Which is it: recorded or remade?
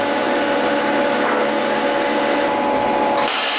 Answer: recorded